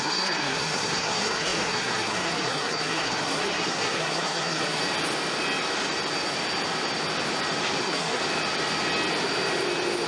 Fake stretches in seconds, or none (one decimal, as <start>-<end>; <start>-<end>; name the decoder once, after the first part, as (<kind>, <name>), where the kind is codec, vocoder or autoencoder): 0.0-4.8 (codec, SNAC); 7.8-8.2